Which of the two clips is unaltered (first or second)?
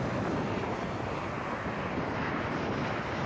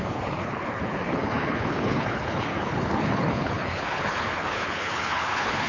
first